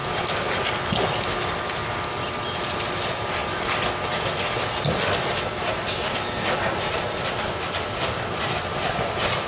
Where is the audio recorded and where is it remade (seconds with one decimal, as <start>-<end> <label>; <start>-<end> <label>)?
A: 0.0-9.5 recorded